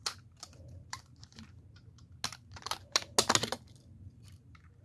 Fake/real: real